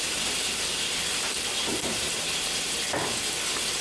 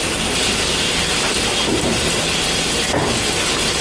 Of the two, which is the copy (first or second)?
first